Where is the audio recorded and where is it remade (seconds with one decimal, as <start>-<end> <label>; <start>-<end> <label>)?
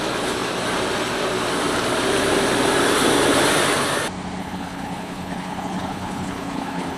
0.0-4.4 recorded; 4.4-7.0 remade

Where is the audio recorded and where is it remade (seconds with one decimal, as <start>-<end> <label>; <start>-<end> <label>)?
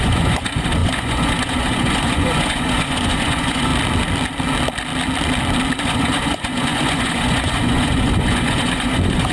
0.0-3.7 remade; 3.7-5.8 recorded; 5.8-9.3 remade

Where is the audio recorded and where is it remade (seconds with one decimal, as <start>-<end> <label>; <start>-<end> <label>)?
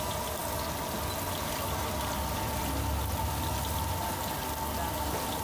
0.0-5.4 recorded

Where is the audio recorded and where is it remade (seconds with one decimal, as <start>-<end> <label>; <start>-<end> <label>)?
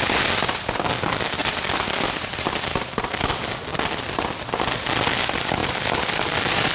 0.0-1.4 recorded; 1.4-3.2 remade; 3.2-5.6 recorded; 5.6-6.7 remade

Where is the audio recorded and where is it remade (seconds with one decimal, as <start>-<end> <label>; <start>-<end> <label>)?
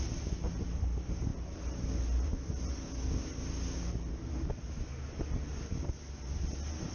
0.0-6.9 recorded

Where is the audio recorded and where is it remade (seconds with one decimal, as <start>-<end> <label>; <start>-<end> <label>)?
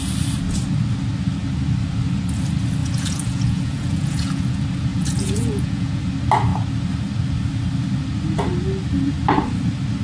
0.0-2.8 recorded; 2.8-4.4 remade; 4.4-4.9 recorded; 4.9-6.0 remade; 6.0-10.0 recorded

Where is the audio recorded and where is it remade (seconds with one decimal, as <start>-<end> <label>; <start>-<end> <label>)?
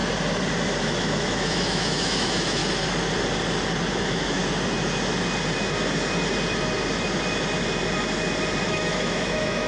0.0-0.8 recorded; 0.8-2.6 remade; 2.6-3.9 recorded; 3.9-4.4 remade; 4.4-8.7 recorded; 8.7-9.7 remade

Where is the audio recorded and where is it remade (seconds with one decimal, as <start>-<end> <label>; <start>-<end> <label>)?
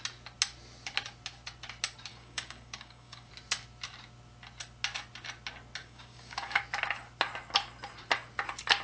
0.0-2.1 recorded; 2.1-3.3 remade; 3.3-5.8 recorded; 5.8-6.6 remade; 6.6-8.8 recorded